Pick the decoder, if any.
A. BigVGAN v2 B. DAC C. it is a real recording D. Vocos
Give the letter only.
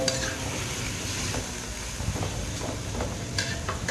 C